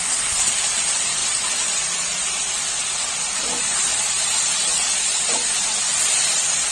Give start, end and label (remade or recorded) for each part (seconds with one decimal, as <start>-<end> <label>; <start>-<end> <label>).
0.0-6.7 recorded